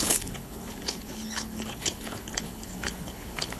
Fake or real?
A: fake